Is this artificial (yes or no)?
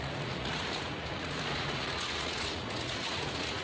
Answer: yes